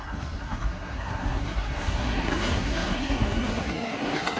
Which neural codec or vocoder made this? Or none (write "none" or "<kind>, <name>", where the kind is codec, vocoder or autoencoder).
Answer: codec, SNAC